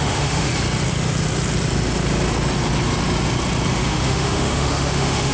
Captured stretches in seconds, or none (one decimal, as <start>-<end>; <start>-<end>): 0.5-3.7